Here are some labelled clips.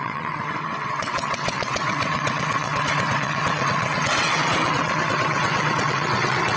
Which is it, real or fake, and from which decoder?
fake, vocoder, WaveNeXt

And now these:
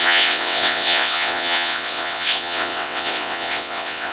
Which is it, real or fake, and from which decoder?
fake, vocoder, WaveNeXt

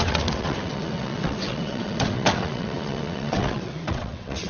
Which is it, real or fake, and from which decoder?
fake, vocoder, WaveNeXt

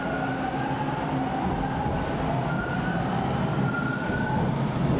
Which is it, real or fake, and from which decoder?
real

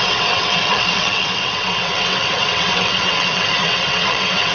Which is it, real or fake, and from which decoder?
fake, vocoder, WaveNeXt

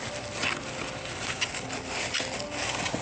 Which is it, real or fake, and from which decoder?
real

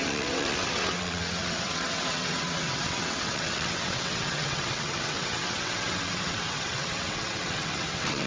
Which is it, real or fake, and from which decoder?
fake, vocoder, WaveNeXt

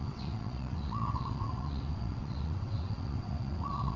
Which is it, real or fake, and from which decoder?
fake, vocoder, WaveNeXt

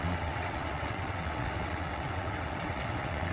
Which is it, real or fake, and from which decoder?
fake, vocoder, WaveNeXt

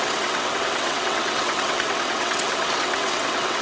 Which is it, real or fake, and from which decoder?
fake, vocoder, WaveNeXt